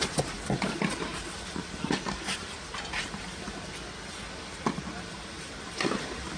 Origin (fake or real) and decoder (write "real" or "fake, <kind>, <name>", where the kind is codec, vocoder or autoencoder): real